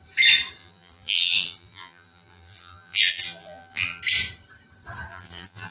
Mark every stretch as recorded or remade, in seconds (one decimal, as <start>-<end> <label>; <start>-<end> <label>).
0.0-0.6 recorded; 0.6-4.0 remade; 4.0-5.1 recorded; 5.1-5.7 remade